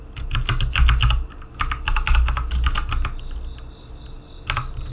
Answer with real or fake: real